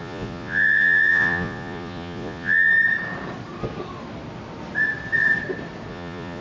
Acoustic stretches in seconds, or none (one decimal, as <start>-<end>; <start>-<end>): 2.7-5.9